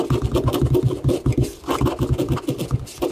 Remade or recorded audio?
recorded